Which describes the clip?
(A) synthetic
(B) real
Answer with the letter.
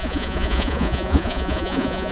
A